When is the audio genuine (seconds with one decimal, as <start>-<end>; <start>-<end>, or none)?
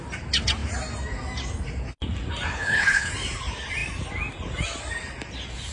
0.0-2.5; 3.1-5.7